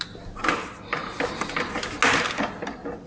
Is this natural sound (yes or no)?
yes